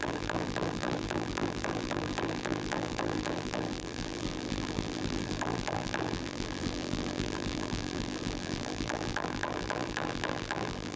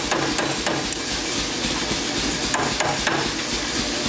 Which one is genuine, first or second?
second